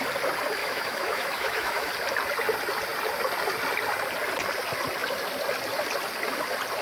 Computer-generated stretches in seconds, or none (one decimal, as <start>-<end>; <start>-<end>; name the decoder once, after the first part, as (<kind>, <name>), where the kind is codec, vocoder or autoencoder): 0.6-1.9 (autoencoder, DAC-VAE)

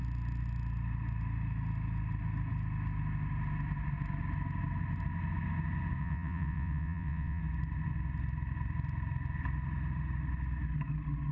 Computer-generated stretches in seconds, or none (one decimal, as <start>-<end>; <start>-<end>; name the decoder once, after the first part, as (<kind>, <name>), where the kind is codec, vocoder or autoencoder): 6.0-7.4 (vocoder, WaveNeXt)

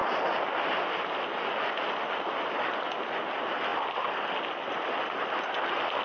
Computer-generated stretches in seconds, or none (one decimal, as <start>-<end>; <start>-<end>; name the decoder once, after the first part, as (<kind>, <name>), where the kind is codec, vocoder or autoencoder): none

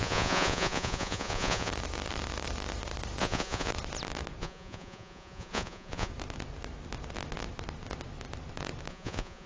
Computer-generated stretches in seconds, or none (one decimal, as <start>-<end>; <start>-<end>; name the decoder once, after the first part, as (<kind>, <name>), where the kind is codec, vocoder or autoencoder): 0.0-1.7 (vocoder, Vocos); 3.2-3.7; 4.4-6.1; 8.9-9.5

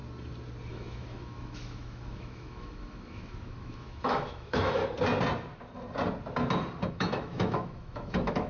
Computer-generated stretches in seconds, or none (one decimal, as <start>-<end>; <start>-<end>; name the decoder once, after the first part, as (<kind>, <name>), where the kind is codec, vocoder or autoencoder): 0.7-4.8 (autoencoder, DAC-VAE); 6.9-8.5